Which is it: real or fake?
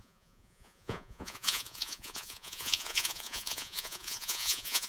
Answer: fake